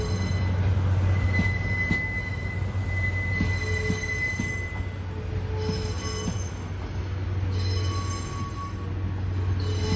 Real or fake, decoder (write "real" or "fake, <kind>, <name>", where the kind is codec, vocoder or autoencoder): real